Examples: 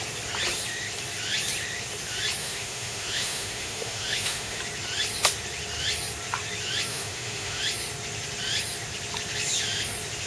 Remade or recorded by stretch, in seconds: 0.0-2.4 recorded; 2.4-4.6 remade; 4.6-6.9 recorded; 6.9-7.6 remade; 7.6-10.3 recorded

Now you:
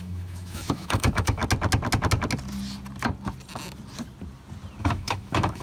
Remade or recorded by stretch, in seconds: 0.0-1.4 remade; 1.4-4.8 recorded; 4.8-5.6 remade

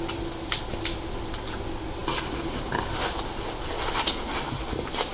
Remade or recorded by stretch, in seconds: 0.0-5.1 recorded

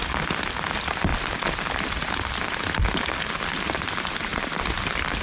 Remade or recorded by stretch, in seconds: 0.0-5.2 recorded